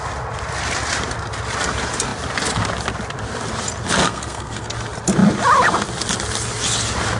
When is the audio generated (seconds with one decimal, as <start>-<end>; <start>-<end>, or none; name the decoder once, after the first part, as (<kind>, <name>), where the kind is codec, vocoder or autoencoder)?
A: 4.0-4.7 (codec, SNAC)